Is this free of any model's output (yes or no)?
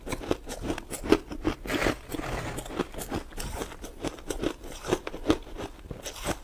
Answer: yes